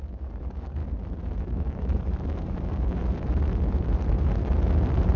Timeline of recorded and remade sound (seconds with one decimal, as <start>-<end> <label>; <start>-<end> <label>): 0.0-0.8 remade; 0.8-1.4 recorded; 1.4-3.0 remade; 3.0-5.2 recorded